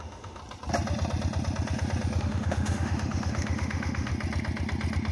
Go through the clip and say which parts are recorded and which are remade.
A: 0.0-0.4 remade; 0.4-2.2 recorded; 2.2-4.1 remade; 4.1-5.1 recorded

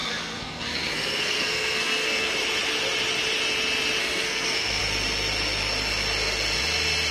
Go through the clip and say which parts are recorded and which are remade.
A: 0.0-2.3 remade; 2.3-4.0 recorded; 4.0-4.8 remade; 4.8-7.1 recorded

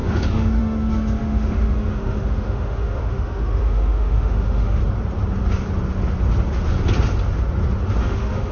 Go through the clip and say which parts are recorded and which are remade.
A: 0.0-4.8 remade; 4.8-8.0 recorded; 8.0-8.5 remade